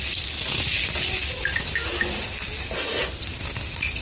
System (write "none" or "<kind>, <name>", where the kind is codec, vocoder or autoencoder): none